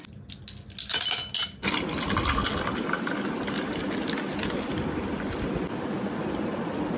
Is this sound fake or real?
real